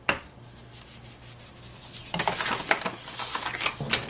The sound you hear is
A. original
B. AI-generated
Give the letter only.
A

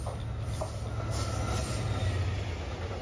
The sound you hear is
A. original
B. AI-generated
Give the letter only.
A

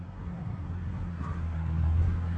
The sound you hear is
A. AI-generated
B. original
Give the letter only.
A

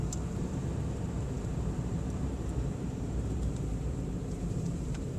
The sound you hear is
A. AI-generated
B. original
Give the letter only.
A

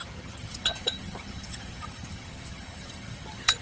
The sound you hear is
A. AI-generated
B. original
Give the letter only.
A